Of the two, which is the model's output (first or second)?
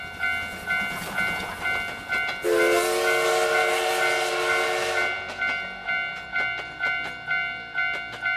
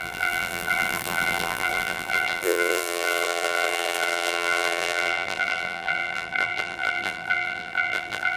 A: second